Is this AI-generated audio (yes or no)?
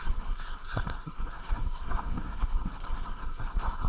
yes